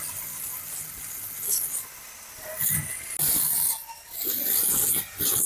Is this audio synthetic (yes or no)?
no